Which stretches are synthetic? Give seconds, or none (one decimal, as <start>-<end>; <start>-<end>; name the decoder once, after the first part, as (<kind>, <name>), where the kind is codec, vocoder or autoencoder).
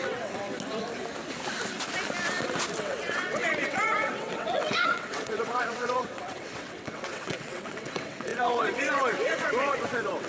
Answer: 0.0-0.5 (vocoder, WaveNeXt); 2.8-10.3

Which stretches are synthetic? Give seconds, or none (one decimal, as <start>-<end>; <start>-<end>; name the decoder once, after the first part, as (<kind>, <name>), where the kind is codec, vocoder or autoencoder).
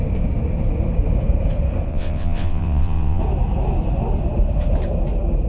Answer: 1.9-3.2 (vocoder, WaveNeXt)